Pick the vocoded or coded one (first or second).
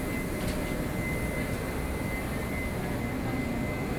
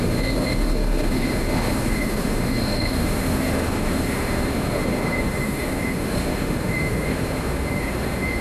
second